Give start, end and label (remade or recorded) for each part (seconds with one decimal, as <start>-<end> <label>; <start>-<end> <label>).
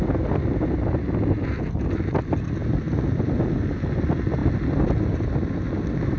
0.0-6.2 recorded